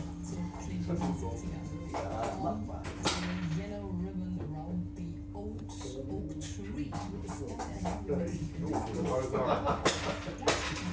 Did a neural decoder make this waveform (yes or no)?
no